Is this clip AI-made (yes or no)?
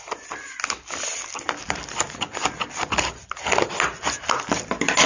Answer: no